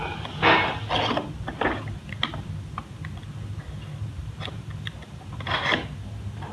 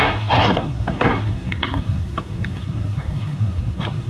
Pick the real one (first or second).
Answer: first